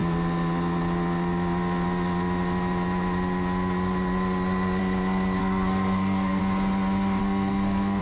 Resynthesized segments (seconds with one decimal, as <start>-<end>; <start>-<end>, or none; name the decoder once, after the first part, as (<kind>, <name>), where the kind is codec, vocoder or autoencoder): 5.4-6.4 (codec, SNAC); 7.2-8.0